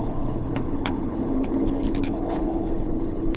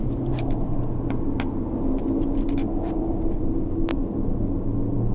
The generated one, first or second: first